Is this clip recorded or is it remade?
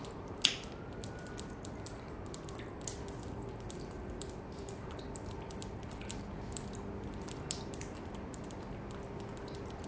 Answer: recorded